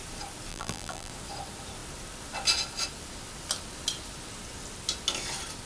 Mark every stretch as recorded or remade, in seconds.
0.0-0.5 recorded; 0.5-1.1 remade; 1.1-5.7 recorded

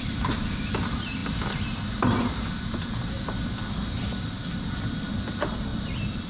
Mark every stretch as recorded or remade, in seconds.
0.0-1.2 remade; 1.2-4.5 recorded; 4.5-6.3 remade

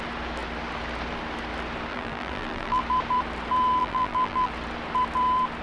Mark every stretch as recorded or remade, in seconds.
0.0-1.9 recorded; 1.9-2.8 remade; 2.8-3.8 recorded; 3.8-4.5 remade; 4.5-5.6 recorded

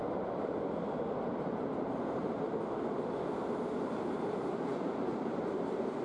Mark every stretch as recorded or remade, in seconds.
0.0-3.2 recorded; 3.2-6.0 remade

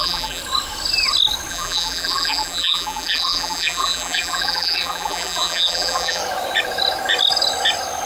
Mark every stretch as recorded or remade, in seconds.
0.0-0.4 remade; 0.4-1.5 recorded; 1.5-6.2 remade; 6.2-8.1 recorded